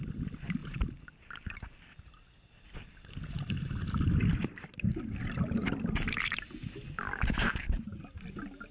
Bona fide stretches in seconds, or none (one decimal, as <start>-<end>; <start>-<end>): 0.0-0.6; 4.7-8.7

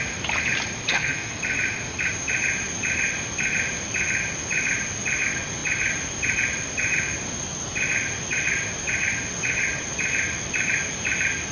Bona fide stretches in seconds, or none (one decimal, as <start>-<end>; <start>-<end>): 0.0-0.9; 1.4-11.5